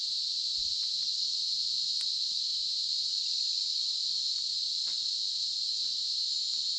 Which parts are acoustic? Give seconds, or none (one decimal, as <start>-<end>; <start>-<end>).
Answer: 0.0-5.7; 6.2-6.8